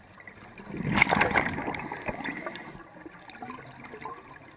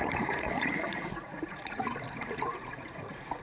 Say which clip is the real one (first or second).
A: first